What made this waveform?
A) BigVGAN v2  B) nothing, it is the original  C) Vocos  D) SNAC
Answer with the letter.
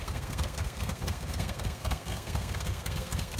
D